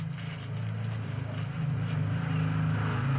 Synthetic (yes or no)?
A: no